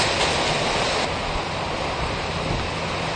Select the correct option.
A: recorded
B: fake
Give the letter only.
A